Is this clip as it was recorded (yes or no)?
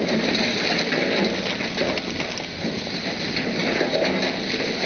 yes